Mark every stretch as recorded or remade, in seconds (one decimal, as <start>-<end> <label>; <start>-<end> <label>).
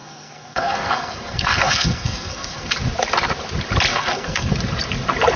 0.0-2.7 remade; 2.7-3.9 recorded; 3.9-4.5 remade; 4.5-5.4 recorded